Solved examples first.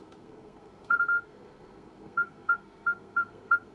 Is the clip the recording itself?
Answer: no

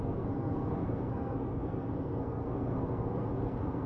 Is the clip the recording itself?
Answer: no